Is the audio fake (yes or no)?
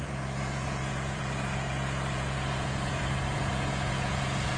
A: yes